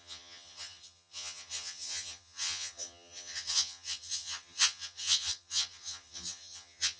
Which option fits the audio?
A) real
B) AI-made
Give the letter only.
B